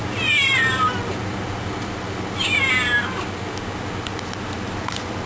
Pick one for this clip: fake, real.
real